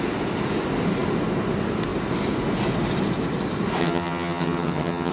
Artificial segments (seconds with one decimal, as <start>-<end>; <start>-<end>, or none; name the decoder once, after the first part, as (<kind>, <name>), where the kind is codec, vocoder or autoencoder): 3.8-5.1 (vocoder, HiFi-GAN)